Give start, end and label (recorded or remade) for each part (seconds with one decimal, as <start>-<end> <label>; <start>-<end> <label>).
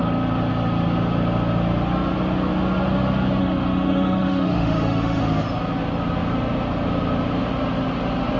0.0-3.4 recorded; 3.4-5.2 remade; 5.2-8.4 recorded